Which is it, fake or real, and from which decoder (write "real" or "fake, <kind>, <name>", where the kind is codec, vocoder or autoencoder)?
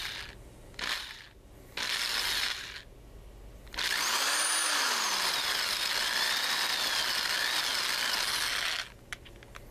real